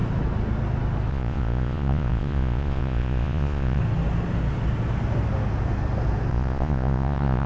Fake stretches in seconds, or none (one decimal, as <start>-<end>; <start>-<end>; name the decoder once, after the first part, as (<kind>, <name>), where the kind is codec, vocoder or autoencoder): 1.1-3.8 (vocoder, Vocos); 6.3-7.5

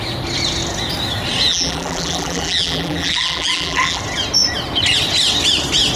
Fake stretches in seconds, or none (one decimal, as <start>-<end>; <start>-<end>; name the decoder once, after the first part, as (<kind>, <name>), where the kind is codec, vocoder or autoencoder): 1.5-4.0 (vocoder, BigVGAN v2)